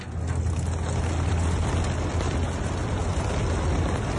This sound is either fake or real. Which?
real